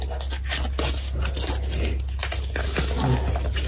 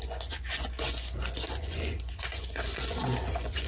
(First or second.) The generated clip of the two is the second